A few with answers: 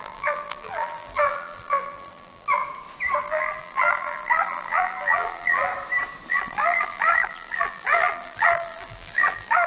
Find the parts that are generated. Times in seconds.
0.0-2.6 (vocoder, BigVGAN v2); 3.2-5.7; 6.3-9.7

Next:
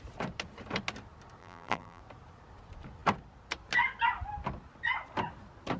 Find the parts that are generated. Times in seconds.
1.4-2.0 (vocoder, BigVGAN v2)